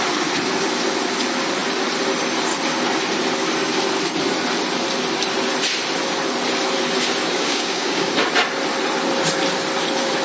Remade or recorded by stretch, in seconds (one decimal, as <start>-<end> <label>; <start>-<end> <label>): 0.0-7.2 recorded; 7.2-8.1 remade; 8.1-10.2 recorded